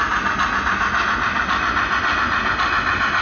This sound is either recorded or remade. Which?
recorded